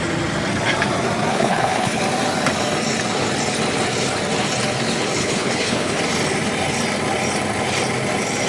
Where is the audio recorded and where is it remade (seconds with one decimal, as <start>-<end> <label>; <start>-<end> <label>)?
0.0-1.3 recorded; 1.3-2.0 remade; 2.0-5.2 recorded; 5.2-6.0 remade; 6.0-8.5 recorded